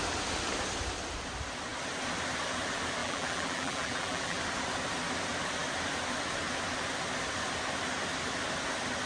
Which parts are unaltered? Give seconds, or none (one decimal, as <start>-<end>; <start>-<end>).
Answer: 0.0-3.0; 4.4-9.1